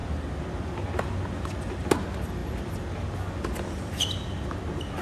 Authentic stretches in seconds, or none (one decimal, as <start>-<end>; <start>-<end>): 0.0-5.0